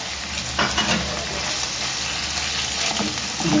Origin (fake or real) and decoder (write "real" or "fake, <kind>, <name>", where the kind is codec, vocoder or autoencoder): real